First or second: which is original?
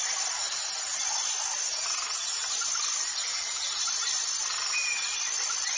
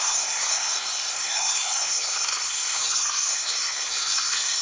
first